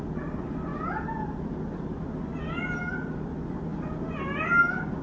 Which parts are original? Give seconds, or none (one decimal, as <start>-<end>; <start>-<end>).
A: 0.0-5.0